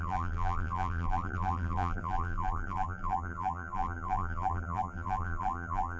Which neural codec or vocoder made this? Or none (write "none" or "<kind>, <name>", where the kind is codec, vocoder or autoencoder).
vocoder, BigVGAN v2